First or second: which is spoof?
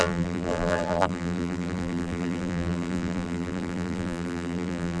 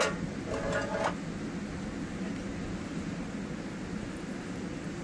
first